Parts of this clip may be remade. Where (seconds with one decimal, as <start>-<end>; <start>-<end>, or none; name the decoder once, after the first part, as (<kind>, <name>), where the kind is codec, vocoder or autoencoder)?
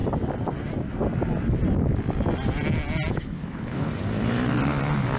3.1-3.9 (codec, HILCodec)